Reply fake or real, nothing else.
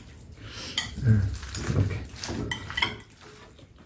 real